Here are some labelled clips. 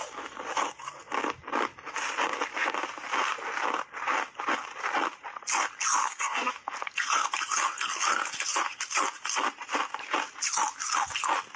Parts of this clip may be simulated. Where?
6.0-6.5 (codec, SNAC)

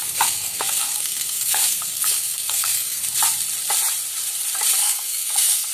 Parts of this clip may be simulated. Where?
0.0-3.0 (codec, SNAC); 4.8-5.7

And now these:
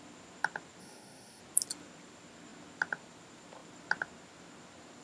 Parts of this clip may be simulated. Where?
0.8-1.4 (codec, SNAC)

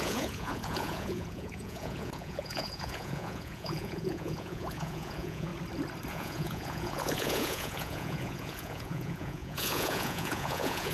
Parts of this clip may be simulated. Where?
0.0-5.5 (vocoder, Vocos); 6.1-10.9

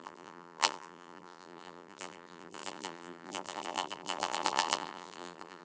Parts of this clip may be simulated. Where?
0.0-5.6 (vocoder, BigVGAN v2)

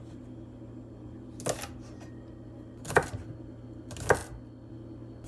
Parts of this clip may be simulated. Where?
none